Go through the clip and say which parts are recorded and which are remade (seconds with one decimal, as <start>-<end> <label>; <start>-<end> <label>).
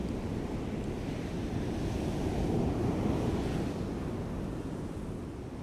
0.0-3.4 remade; 3.4-5.6 recorded